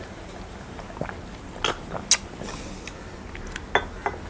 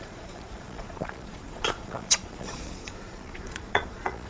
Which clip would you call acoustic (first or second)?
first